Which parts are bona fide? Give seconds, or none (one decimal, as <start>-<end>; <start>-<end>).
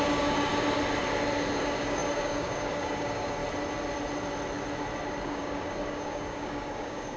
0.5-1.6; 3.4-5.2